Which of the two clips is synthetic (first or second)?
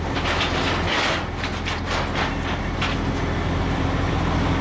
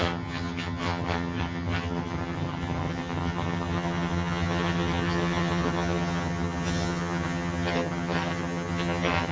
second